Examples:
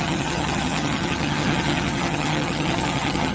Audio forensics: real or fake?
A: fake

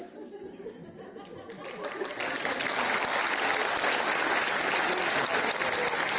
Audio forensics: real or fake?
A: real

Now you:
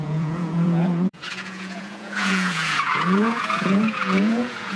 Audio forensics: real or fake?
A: fake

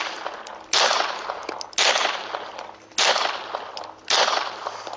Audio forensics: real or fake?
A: real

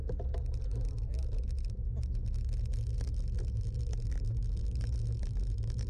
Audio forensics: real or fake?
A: real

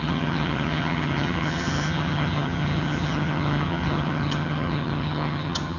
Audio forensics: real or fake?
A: fake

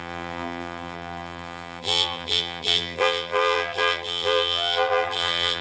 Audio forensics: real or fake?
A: fake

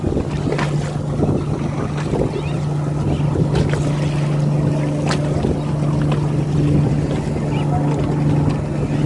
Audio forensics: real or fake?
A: real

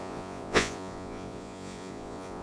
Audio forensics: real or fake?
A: fake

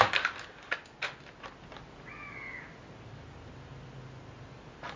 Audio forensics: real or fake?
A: real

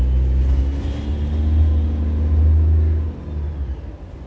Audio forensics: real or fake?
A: real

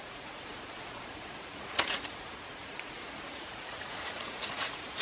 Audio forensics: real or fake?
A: fake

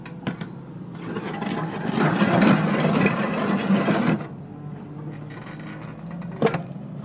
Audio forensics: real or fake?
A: real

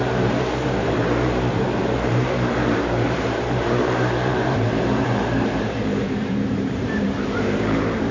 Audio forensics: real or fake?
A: fake